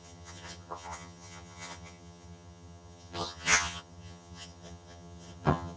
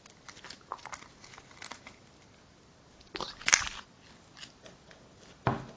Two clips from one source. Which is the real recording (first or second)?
second